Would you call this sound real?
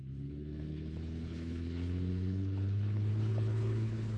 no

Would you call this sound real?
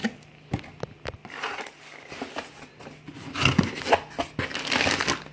yes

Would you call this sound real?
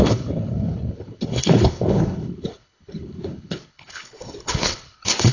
no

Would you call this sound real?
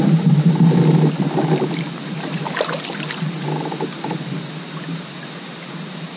yes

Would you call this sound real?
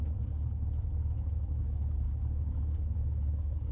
no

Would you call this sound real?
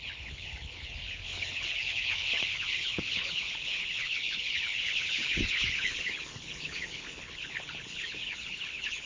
no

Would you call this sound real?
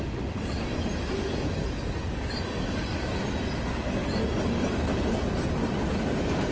yes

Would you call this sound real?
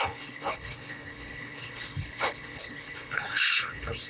no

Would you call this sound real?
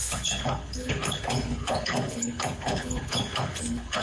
no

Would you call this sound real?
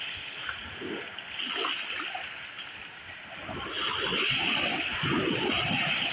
yes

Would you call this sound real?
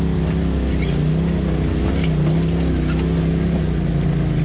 yes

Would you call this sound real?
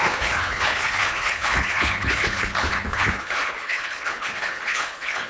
no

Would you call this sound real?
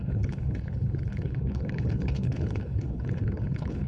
no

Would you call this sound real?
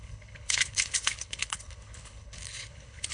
no